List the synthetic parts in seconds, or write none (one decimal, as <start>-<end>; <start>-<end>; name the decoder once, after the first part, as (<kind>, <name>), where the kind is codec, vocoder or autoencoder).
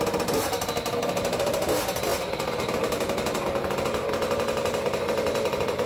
none